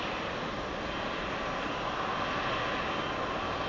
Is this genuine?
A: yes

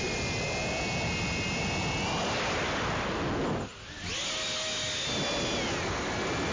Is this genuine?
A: yes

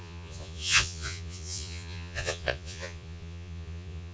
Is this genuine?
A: no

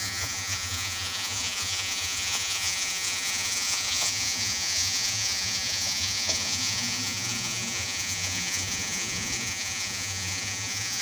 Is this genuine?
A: no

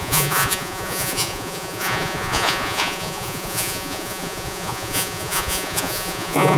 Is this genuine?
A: no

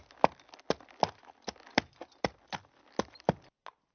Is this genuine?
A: yes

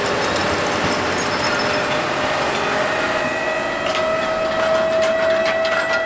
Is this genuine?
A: yes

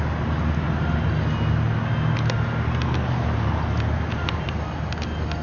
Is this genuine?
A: yes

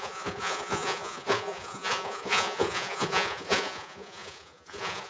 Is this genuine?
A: no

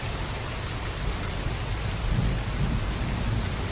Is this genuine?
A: yes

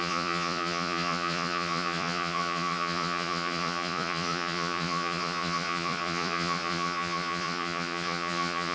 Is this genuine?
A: no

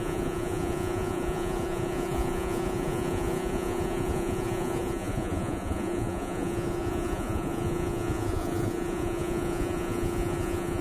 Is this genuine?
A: no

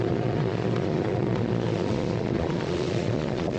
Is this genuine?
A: no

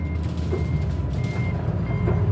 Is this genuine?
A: yes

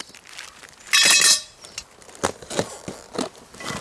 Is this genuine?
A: yes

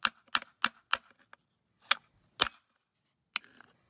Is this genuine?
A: yes